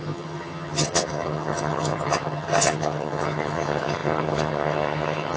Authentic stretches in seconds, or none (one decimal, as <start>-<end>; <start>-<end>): none

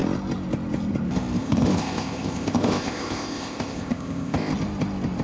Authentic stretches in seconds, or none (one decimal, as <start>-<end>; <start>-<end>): 0.0-1.4; 4.5-5.2

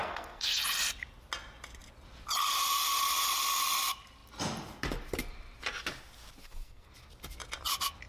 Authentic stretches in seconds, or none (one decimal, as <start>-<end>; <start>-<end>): 0.6-6.4; 6.9-8.1

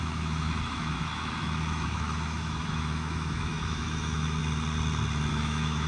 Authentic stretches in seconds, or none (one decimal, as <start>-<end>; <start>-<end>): 4.4-5.3

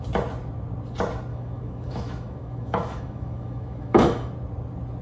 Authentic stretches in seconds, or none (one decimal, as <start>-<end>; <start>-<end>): 0.0-1.3; 4.3-5.0